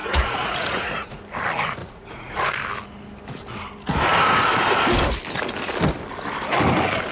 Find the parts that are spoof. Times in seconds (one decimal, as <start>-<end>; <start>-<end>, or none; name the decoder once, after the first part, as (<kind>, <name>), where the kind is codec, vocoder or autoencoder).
0.0-1.2 (vocoder, Vocos); 1.8-2.5